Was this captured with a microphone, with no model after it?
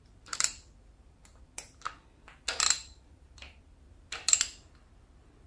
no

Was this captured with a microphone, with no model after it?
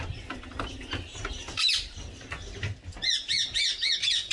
yes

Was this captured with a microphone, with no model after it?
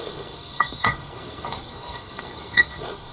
no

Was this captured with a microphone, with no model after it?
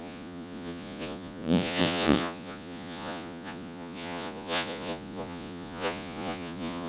no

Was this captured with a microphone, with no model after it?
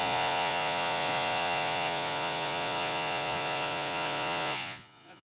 no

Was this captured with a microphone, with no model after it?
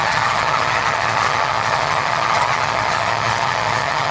no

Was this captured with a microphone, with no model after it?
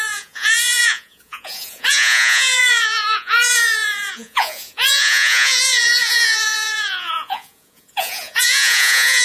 no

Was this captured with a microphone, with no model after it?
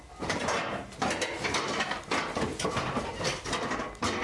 yes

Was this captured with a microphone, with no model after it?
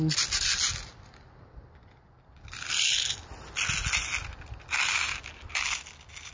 yes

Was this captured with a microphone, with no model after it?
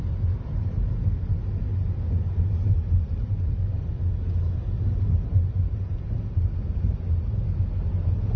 yes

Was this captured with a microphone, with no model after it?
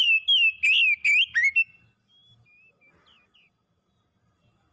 yes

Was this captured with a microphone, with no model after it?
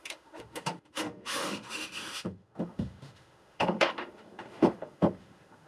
no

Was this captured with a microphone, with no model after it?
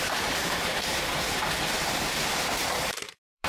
no